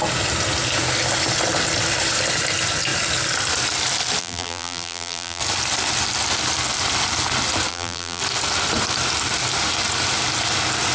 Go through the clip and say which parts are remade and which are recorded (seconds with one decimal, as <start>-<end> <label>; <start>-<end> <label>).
0.0-4.2 recorded; 4.2-5.4 remade; 5.4-7.7 recorded; 7.7-8.2 remade; 8.2-10.9 recorded